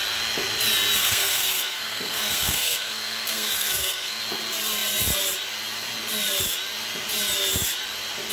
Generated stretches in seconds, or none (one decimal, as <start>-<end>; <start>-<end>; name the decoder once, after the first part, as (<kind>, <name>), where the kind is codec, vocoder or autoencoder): 1.0-4.2 (codec, SNAC)

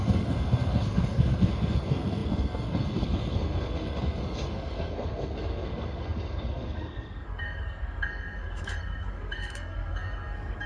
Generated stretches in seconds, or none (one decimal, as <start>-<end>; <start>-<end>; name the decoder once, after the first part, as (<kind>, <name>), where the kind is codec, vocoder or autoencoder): 0.0-10.7 (codec, SNAC)

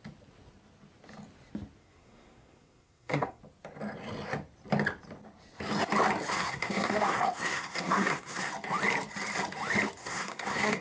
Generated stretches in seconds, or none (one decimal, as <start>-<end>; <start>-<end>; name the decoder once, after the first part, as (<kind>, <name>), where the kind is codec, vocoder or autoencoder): 1.8-3.4 (codec, SNAC); 6.3-8.5; 10.0-10.8